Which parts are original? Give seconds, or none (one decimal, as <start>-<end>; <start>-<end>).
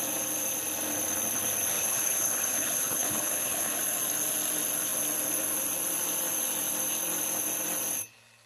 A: 0.0-1.7; 3.8-8.5